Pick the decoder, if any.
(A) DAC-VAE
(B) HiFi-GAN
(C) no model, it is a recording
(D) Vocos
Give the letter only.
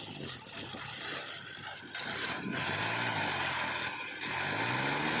C